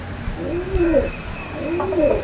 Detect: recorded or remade recorded